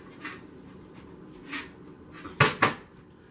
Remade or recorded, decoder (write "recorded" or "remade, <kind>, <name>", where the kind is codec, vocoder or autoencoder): recorded